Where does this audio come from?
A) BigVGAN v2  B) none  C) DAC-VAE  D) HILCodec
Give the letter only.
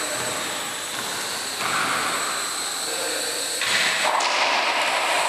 B